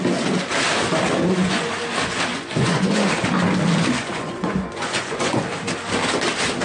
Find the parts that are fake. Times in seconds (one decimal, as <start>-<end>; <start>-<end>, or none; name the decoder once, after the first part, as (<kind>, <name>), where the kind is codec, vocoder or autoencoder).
1.2-1.7 (vocoder, Vocos); 2.3-3.1; 4.0-5.4